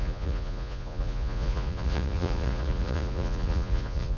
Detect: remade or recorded remade